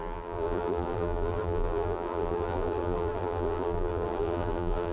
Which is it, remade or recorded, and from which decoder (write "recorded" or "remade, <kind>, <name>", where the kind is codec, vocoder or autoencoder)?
remade, vocoder, BigVGAN v2